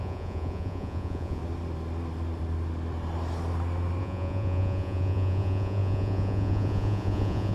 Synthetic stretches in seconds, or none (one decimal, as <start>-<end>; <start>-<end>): 0.0-1.4; 4.0-7.5